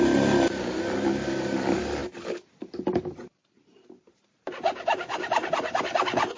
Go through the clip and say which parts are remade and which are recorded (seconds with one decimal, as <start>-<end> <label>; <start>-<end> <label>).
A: 0.0-6.4 recorded